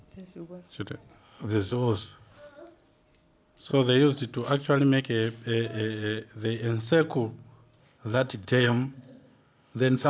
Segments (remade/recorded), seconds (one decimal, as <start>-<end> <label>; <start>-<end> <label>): 0.0-1.2 recorded; 1.2-2.3 remade; 2.3-7.8 recorded; 7.8-10.1 remade